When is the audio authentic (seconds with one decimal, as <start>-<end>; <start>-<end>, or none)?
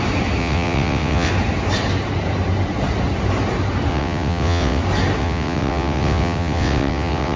0.0-0.4; 1.3-3.9; 4.8-5.2